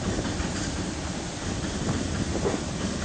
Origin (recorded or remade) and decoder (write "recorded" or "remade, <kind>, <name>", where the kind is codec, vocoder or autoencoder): recorded